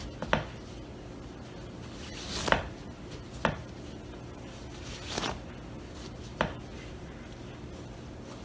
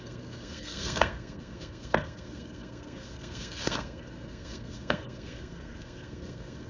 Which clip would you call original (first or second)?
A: first